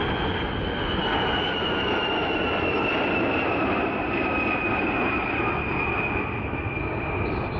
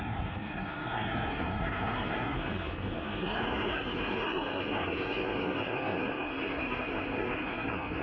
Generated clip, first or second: second